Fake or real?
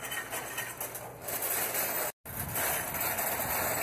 real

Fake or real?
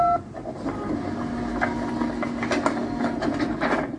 real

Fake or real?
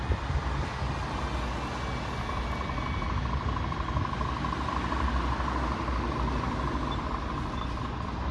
real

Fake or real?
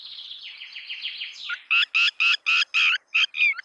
real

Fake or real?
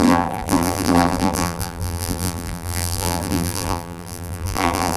fake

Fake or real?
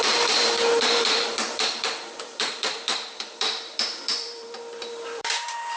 fake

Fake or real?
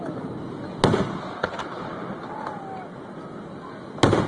real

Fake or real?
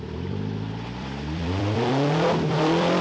fake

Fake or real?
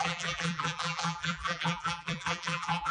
fake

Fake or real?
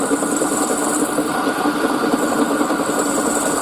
fake